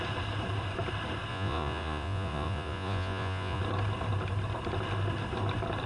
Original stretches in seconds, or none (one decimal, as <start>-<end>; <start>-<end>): 0.0-1.3; 3.6-5.9